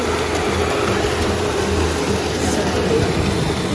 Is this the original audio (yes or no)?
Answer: yes